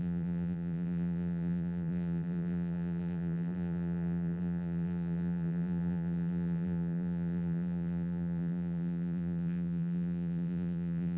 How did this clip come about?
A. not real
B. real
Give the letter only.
A